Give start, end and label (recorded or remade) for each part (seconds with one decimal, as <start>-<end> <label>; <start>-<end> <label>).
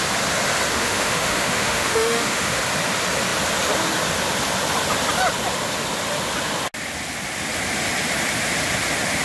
0.0-0.7 recorded; 0.7-2.6 remade; 2.6-9.2 recorded